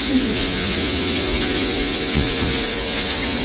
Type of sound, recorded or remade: remade